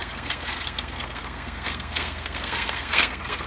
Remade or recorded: remade